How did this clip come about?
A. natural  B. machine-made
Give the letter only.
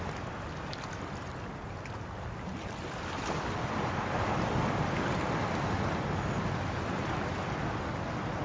A